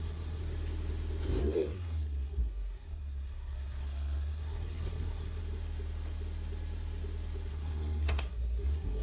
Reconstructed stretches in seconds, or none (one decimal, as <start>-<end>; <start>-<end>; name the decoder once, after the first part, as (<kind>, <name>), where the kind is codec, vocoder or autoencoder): 0.0-0.4 (codec, SNAC); 1.4-5.4; 7.5-9.0